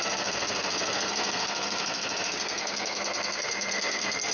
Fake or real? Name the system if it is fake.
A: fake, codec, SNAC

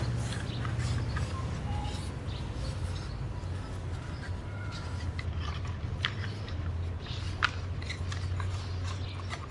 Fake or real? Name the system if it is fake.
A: real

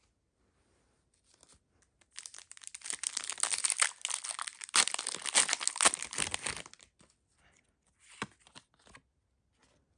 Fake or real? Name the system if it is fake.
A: real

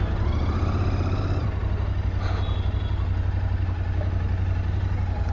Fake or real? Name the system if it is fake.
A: real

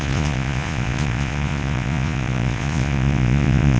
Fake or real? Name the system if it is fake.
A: fake, vocoder, Vocos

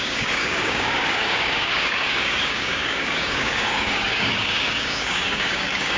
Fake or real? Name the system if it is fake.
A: fake, codec, DAC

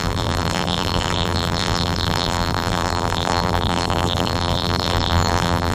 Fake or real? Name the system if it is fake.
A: fake, vocoder, BigVGAN v2